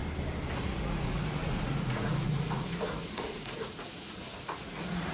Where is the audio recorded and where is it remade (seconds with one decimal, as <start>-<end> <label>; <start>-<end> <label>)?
0.0-0.6 recorded; 0.6-5.1 remade